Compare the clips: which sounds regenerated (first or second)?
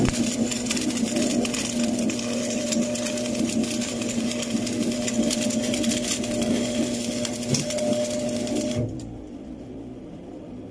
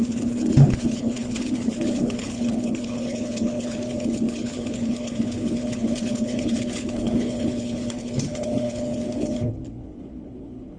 second